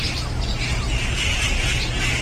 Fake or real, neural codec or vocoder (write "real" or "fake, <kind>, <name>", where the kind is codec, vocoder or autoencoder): real